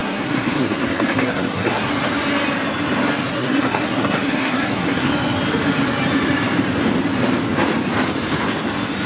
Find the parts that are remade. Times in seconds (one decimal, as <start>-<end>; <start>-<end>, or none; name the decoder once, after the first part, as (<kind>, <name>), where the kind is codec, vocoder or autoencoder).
0.0-1.9 (codec, SNAC); 3.3-5.1

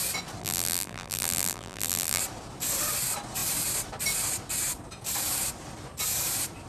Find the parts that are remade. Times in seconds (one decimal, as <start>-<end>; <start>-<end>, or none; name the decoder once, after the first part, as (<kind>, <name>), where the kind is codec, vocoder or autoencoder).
0.4-2.2 (vocoder, BigVGAN v2)

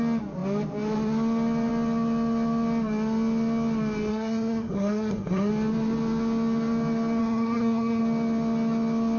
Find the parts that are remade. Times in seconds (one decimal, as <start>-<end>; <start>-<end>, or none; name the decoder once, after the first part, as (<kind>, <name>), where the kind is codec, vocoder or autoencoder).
4.1-5.5 (codec, SNAC); 7.2-8.0

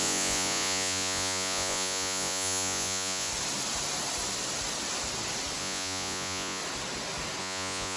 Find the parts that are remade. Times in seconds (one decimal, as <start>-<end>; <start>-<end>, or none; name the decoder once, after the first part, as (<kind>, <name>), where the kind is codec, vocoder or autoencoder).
0.0-3.3 (vocoder, Vocos); 5.6-6.6; 7.4-8.0

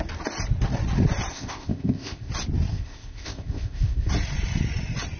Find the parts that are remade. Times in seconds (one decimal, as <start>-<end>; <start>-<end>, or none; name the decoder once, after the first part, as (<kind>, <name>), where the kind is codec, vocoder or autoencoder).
1.3-2.3 (codec, ZipCodec); 2.7-4.1

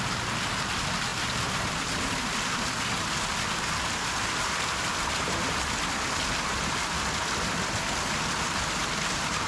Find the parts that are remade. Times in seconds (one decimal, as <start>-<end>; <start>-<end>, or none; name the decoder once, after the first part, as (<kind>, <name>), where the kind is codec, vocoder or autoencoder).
none

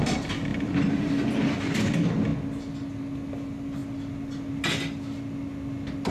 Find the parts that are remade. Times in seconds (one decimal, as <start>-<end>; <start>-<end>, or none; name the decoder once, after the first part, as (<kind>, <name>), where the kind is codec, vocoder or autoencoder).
none

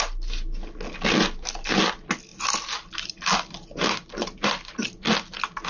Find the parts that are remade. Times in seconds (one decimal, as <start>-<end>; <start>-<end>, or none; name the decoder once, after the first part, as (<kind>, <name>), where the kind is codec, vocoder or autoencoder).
none